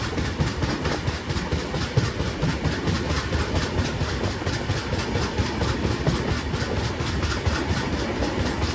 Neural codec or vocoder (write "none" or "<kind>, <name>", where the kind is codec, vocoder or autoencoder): none